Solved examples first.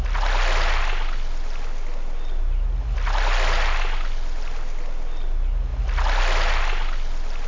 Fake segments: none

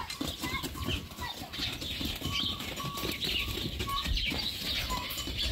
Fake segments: none

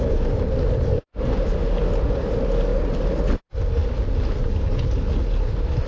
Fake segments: none

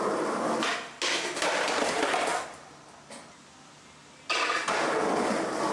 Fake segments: none

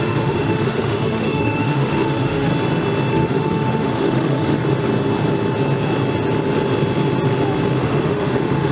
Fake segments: 0.0-2.5 (autoencoder, DAC-VAE); 3.1-4.6; 7.8-8.7

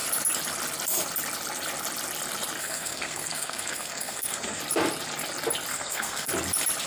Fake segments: 2.6-4.6 (codec, SNAC); 5.7-6.3